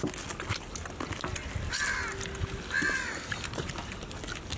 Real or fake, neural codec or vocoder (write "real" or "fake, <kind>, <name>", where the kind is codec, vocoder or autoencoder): real